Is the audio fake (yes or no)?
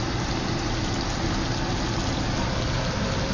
no